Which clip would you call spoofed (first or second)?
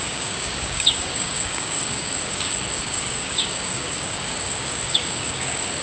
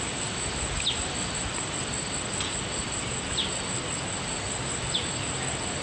first